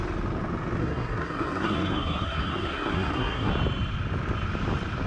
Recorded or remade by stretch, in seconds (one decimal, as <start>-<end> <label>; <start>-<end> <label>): 0.0-0.8 recorded; 0.8-3.5 remade; 3.5-5.1 recorded